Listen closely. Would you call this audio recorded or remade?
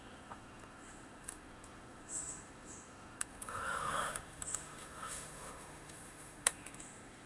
remade